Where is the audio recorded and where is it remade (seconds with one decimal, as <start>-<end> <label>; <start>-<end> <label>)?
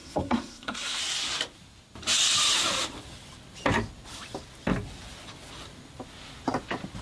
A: 0.0-1.0 remade; 1.0-7.0 recorded